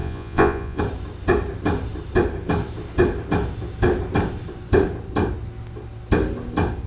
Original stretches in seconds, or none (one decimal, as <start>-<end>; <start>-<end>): 0.8-6.9